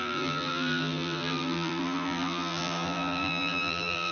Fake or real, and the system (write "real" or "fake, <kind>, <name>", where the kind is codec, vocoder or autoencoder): fake, vocoder, BigVGAN v2